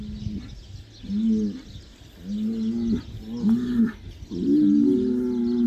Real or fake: real